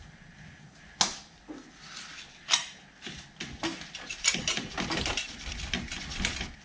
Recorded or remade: recorded